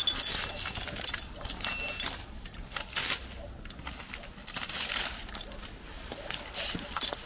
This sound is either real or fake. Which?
real